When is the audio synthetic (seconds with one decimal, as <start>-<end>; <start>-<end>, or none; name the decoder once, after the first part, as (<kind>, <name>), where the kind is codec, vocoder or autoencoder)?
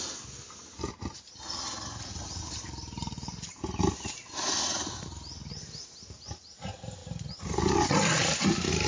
none